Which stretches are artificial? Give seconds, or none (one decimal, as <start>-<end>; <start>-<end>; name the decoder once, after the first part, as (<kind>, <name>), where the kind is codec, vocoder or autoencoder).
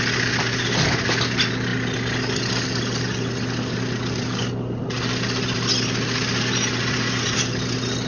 none